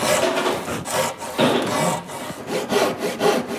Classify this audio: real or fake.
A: real